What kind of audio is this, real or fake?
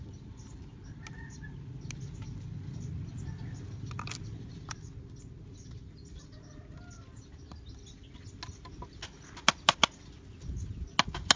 real